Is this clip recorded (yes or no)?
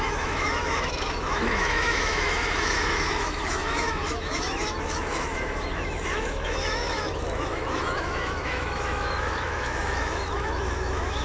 no